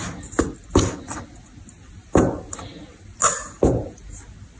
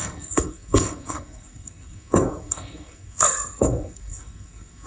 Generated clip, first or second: second